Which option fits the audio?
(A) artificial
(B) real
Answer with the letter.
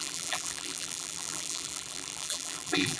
A